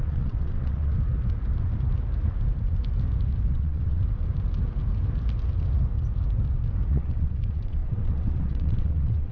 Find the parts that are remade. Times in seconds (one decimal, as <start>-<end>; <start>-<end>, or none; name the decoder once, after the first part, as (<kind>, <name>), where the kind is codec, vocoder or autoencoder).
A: 0.0-0.9 (vocoder, WaveNeXt); 3.5-4.0; 6.9-9.3